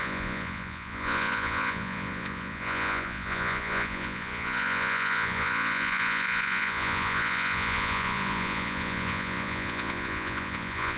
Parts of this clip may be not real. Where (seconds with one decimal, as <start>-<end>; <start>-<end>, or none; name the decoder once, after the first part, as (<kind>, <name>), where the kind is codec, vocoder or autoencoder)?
0.0-11.0 (vocoder, Vocos)